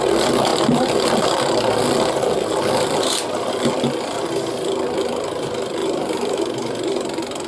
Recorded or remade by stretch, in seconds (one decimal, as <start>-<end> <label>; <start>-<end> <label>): 0.0-5.8 recorded; 5.8-6.7 remade; 6.7-7.5 recorded